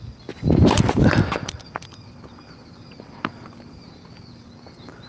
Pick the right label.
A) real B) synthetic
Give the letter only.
A